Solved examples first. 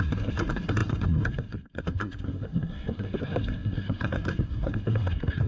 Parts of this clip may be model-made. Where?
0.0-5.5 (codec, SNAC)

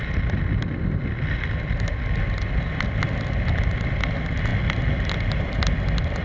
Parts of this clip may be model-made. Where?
none

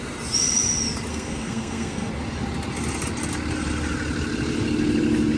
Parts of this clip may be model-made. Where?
1.1-2.1 (codec, SNAC)

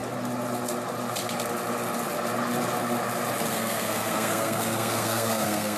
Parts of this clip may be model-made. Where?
3.5-5.8 (codec, SNAC)

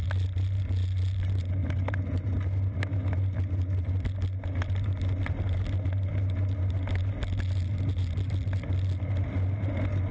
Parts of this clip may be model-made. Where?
none

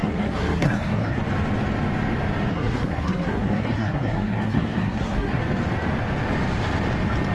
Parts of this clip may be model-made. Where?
0.0-1.2 (codec, SNAC); 2.5-5.4

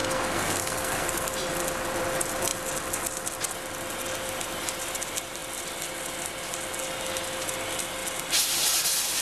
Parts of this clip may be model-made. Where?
0.0-1.3 (codec, SNAC)